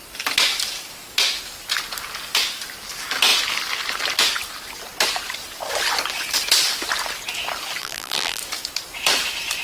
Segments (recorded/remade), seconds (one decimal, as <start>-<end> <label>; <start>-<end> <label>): 0.0-7.8 recorded; 7.8-8.4 remade; 8.4-9.6 recorded